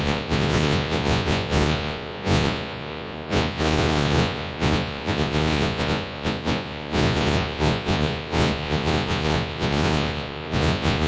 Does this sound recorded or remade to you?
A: remade